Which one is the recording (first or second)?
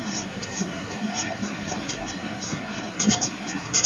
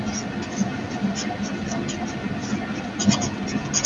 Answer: second